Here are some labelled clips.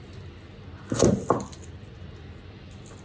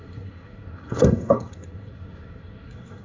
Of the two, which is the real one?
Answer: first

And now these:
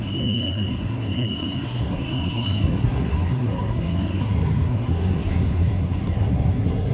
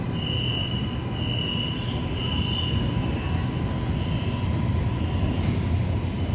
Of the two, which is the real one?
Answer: second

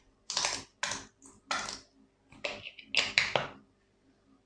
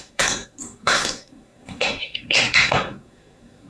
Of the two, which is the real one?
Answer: first